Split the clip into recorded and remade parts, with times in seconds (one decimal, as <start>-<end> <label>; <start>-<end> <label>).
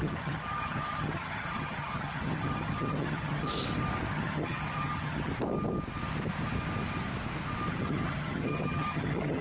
0.0-3.5 remade; 3.5-4.1 recorded; 4.1-5.3 remade; 5.3-7.7 recorded; 7.7-9.4 remade